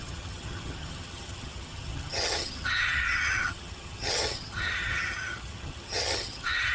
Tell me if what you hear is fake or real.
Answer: fake